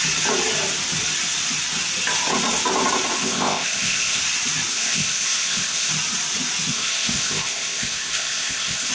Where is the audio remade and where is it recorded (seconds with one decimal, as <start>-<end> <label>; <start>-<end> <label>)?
0.0-3.2 recorded; 3.2-4.2 remade; 4.2-4.7 recorded; 4.7-5.9 remade; 5.9-6.7 recorded; 6.7-8.9 remade